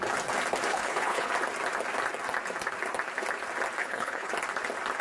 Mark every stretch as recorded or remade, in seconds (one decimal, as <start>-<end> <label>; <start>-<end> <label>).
0.0-0.7 recorded; 0.7-1.3 remade; 1.3-3.8 recorded; 3.8-4.3 remade; 4.3-5.0 recorded